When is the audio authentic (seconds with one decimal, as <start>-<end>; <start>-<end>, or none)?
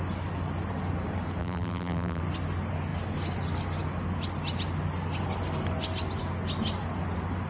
0.0-1.4; 2.2-7.5